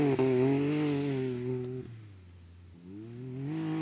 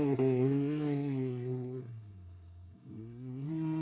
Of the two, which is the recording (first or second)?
first